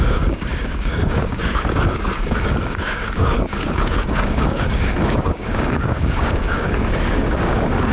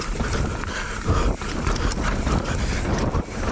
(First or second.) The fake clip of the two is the first